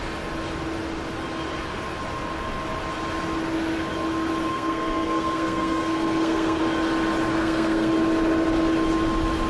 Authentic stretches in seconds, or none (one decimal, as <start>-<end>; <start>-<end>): 0.0-4.5; 6.6-7.3; 7.9-9.5